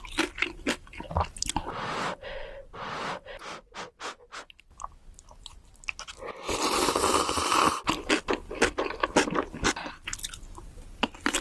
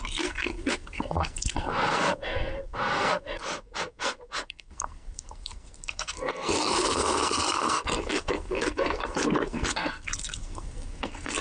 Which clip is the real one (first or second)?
first